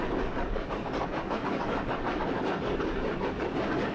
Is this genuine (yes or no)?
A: no